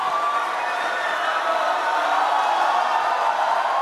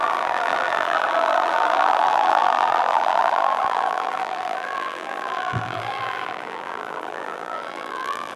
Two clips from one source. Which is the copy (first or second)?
second